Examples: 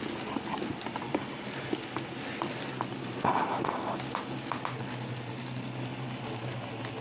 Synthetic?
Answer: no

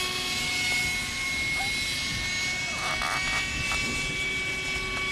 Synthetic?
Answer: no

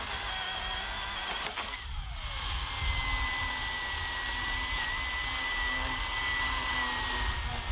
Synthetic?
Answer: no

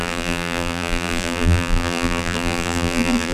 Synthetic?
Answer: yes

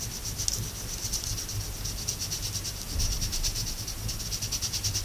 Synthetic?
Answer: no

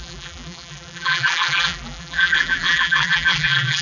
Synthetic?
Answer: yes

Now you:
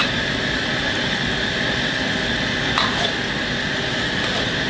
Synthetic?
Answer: no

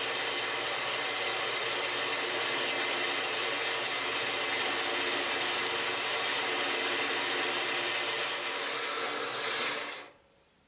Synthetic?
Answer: no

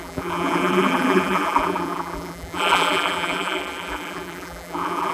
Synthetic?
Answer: yes